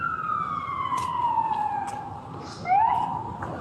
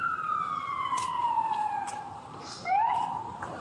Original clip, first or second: first